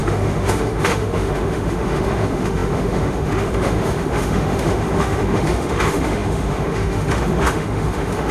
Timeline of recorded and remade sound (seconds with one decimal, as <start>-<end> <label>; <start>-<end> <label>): 0.0-8.3 remade